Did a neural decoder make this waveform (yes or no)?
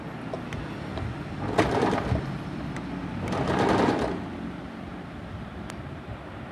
no